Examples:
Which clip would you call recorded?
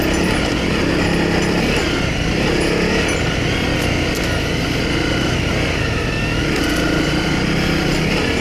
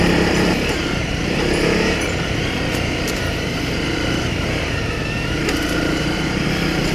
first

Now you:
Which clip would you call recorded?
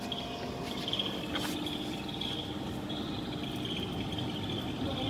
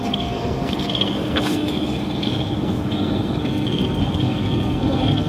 first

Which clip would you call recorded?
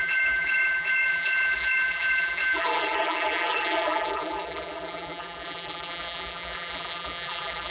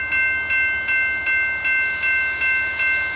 second